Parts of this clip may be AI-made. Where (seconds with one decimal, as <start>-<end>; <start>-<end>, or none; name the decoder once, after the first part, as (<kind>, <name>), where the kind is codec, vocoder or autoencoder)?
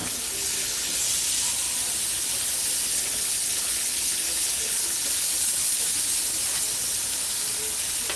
0.0-1.0 (codec, HILCodec); 2.9-5.1